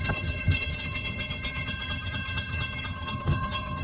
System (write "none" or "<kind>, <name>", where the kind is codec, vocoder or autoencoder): vocoder, HiFi-GAN